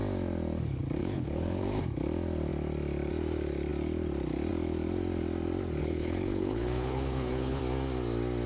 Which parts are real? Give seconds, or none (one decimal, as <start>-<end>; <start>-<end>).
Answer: 0.0-1.0; 1.8-5.8; 7.6-8.5